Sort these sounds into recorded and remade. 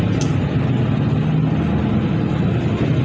recorded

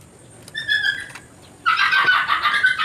recorded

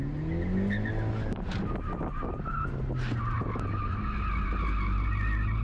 recorded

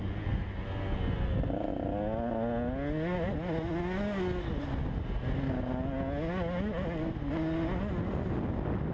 recorded